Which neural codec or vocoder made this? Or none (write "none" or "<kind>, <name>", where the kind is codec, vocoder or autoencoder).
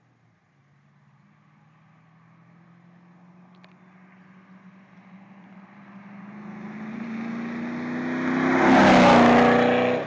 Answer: none